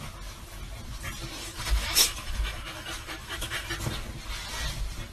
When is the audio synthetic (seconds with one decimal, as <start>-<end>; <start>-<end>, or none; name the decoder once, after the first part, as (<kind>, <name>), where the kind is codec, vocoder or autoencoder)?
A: 1.4-3.7 (autoencoder, DAC-VAE)